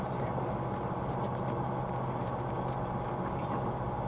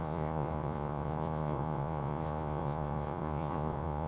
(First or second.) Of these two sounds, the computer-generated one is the second